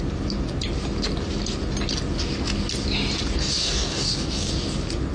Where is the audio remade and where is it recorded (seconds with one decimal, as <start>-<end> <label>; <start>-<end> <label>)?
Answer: 0.0-3.6 recorded; 3.6-4.5 remade; 4.5-5.1 recorded